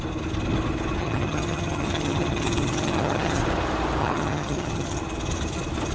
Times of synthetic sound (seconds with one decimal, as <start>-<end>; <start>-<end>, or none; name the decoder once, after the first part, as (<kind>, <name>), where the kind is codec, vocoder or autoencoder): 1.0-3.4 (vocoder, HiFi-GAN); 4.0-5.0